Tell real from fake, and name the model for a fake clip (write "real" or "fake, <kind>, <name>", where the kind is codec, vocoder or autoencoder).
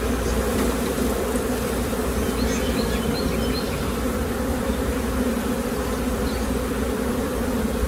fake, vocoder, BigVGAN v2